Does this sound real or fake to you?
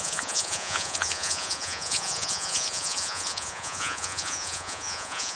fake